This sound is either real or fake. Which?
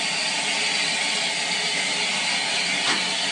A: real